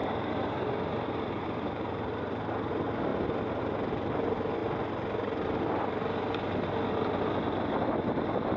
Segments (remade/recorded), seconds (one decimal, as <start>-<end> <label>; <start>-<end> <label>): 0.0-2.1 remade; 2.1-8.6 recorded